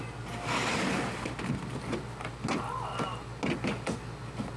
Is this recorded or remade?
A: recorded